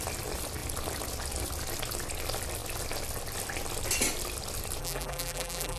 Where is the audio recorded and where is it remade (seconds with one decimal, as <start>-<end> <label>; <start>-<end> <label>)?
0.0-4.8 recorded; 4.8-5.8 remade